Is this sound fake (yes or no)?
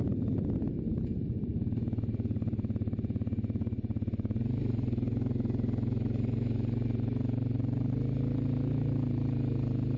no